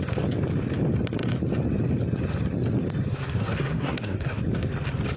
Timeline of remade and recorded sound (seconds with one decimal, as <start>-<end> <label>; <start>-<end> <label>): 0.0-3.2 recorded; 3.2-4.4 remade; 4.4-5.2 recorded